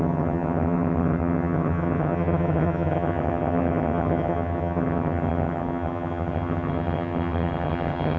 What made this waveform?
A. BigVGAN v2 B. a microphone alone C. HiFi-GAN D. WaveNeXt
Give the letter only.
C